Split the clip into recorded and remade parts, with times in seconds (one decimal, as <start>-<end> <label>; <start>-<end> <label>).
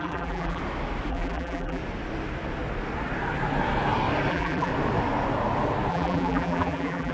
0.0-0.6 remade; 0.6-1.1 recorded; 1.1-1.8 remade; 1.8-4.3 recorded; 4.3-4.7 remade; 4.7-5.9 recorded; 5.9-7.1 remade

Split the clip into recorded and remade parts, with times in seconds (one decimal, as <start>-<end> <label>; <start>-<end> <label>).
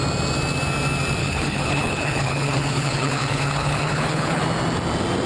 0.0-1.2 recorded; 1.2-4.4 remade; 4.4-5.3 recorded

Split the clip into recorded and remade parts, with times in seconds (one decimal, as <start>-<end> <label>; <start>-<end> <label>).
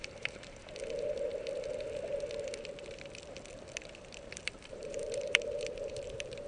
0.0-0.6 remade; 0.6-4.4 recorded; 4.4-6.5 remade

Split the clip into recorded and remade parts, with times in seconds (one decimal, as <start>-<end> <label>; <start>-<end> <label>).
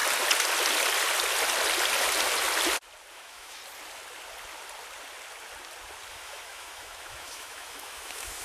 0.0-3.1 recorded; 3.1-3.6 remade; 3.6-6.1 recorded; 6.1-8.4 remade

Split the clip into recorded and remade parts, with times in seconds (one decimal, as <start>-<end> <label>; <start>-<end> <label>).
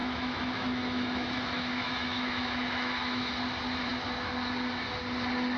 0.0-3.3 remade; 3.3-5.6 recorded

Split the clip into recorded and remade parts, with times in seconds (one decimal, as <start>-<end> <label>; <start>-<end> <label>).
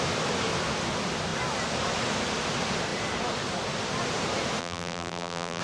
0.0-4.6 recorded; 4.6-5.6 remade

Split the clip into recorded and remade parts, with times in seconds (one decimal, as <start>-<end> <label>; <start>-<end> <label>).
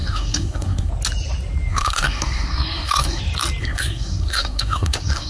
0.0-0.9 remade; 0.9-1.7 recorded; 1.7-3.2 remade; 3.2-3.6 recorded; 3.6-5.3 remade